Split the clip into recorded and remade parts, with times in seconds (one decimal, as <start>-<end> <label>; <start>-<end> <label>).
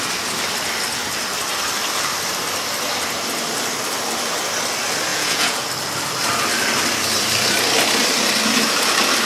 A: 0.0-5.1 recorded; 5.1-5.7 remade; 5.7-9.3 recorded